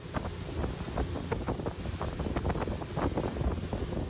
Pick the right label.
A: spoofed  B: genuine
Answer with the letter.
B